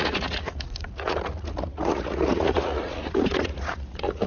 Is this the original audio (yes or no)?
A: no